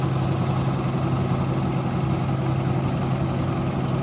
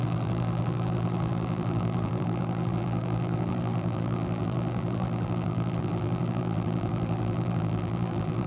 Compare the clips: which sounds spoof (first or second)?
second